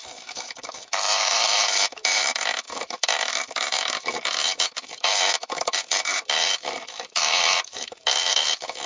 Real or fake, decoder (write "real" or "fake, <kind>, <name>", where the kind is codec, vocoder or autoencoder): fake, autoencoder, DAC-VAE